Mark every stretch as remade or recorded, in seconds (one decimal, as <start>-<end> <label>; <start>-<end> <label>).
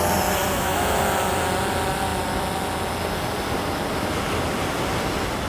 0.0-0.4 recorded; 0.4-1.0 remade; 1.0-5.5 recorded